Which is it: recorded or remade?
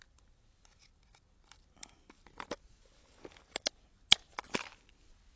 recorded